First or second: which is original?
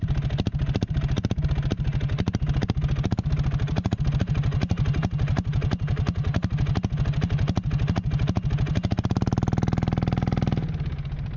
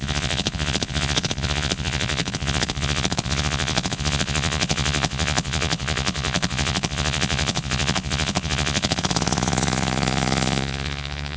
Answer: first